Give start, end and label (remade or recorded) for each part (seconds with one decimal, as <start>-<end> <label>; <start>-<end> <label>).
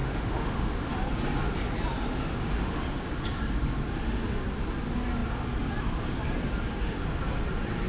0.0-0.9 remade; 0.9-2.1 recorded; 2.1-2.8 remade; 2.8-7.9 recorded